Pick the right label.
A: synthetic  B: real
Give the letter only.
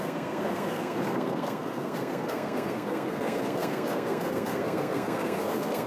A